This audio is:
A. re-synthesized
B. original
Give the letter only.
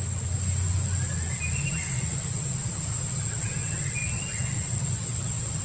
B